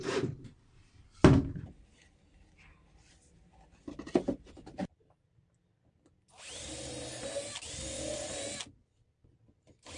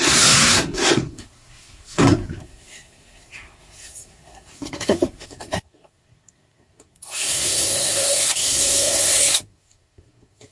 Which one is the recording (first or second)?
first